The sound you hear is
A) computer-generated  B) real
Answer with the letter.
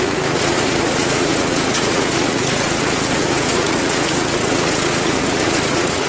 A